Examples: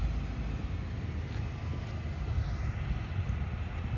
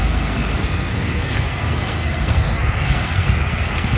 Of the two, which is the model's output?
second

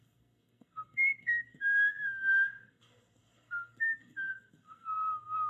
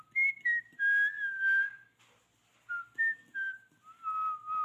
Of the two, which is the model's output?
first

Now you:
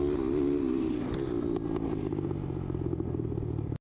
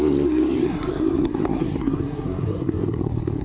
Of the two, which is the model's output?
second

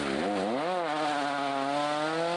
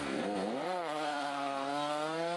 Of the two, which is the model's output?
second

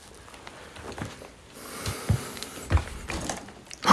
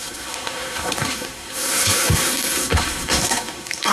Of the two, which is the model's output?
second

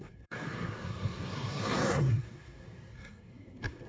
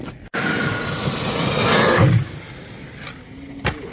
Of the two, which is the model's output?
first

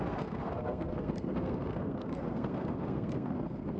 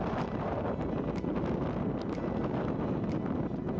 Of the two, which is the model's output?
first